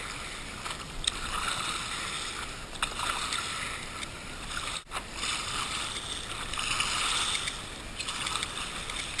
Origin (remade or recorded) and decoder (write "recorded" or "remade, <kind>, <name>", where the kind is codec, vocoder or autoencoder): recorded